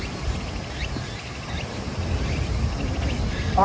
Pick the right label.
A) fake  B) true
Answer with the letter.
B